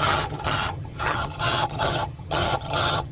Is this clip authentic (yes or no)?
no